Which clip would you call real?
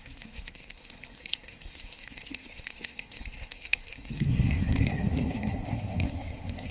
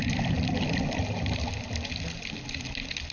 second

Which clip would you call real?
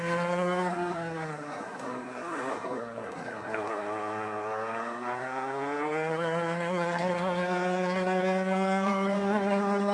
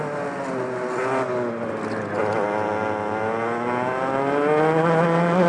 second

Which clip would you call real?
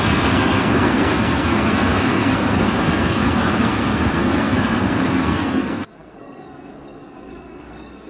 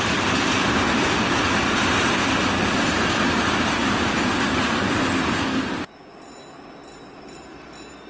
second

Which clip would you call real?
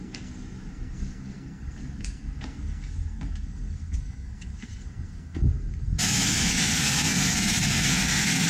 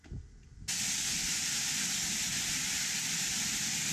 second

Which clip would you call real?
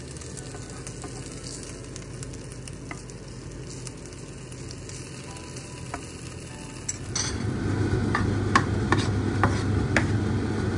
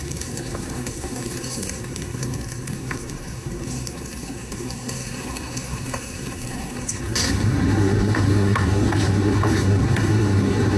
first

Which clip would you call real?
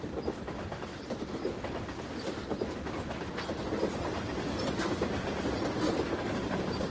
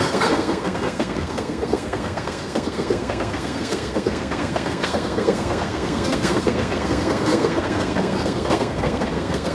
first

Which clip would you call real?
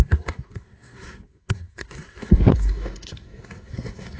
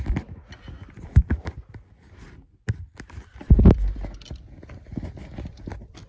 second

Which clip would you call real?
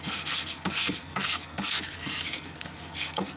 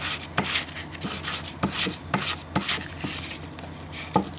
second